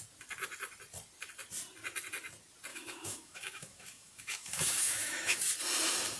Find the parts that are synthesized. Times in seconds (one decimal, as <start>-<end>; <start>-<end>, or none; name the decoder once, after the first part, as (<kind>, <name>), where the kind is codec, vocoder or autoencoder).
2.7-5.4 (autoencoder, DAC-VAE)

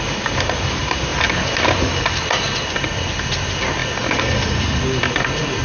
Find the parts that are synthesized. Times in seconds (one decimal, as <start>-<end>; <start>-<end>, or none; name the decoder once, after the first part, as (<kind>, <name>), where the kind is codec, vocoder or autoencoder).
none

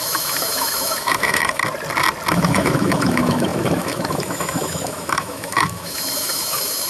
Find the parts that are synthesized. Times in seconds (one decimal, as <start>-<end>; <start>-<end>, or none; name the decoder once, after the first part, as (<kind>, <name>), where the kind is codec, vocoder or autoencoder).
0.0-1.6 (autoencoder, DAC-VAE); 2.3-6.9

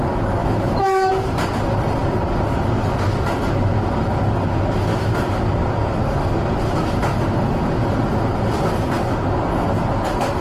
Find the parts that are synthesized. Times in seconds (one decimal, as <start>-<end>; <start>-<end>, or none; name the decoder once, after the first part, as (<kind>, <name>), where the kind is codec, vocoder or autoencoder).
0.4-1.1 (autoencoder, DAC-VAE)

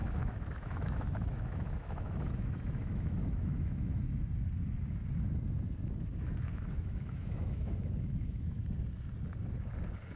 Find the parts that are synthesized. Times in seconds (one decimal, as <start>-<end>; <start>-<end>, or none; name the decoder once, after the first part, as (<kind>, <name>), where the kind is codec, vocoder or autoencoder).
0.0-4.0 (autoencoder, DAC-VAE); 6.5-8.6

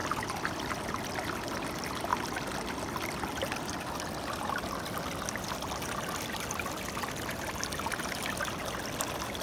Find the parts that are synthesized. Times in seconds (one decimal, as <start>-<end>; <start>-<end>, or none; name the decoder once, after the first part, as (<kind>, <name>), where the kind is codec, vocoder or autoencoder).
none